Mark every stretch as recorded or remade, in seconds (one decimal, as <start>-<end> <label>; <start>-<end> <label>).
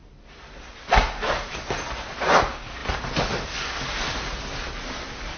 0.0-2.8 recorded; 2.8-5.4 remade